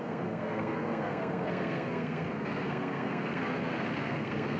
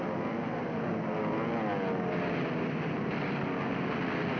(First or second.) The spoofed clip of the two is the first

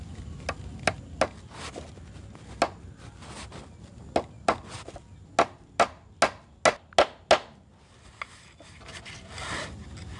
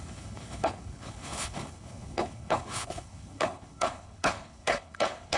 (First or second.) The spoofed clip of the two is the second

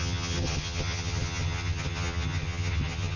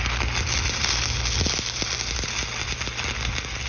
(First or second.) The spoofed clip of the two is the first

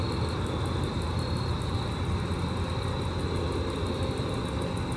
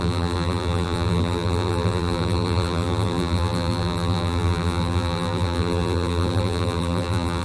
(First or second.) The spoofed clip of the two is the second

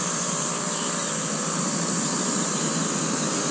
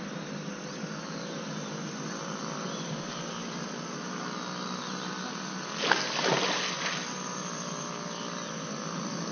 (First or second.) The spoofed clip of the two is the first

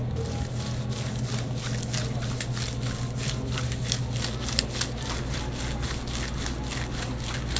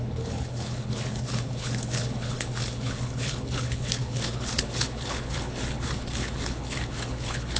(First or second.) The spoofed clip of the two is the second